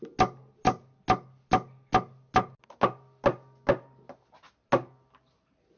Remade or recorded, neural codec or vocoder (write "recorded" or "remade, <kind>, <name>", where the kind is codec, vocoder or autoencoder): recorded